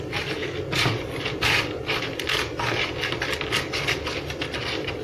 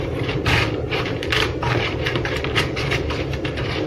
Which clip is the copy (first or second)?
second